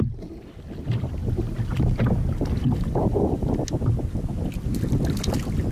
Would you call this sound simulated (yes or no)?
no